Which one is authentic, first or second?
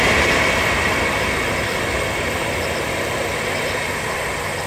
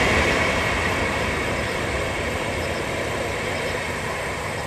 first